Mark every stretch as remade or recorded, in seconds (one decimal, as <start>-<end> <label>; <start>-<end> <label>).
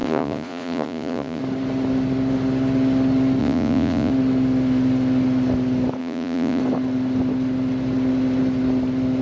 0.0-1.4 remade; 1.4-3.4 recorded; 3.4-4.1 remade; 4.1-6.0 recorded; 6.0-6.6 remade; 6.6-9.2 recorded